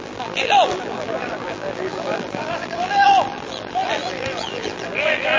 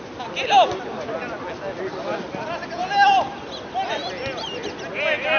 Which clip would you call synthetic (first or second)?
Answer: first